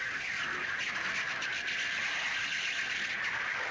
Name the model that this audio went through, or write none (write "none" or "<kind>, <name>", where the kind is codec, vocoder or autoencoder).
none